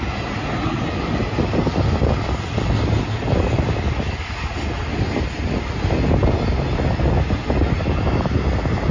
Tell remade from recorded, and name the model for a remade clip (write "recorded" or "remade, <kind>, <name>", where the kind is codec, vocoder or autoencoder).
recorded